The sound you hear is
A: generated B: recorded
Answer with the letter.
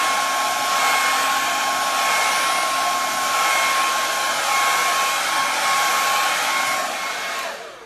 B